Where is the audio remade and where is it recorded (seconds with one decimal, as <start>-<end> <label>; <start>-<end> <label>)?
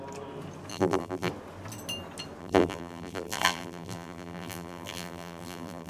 0.0-0.7 recorded; 0.7-1.3 remade; 1.3-2.4 recorded; 2.4-5.9 remade